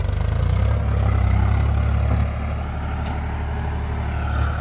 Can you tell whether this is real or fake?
real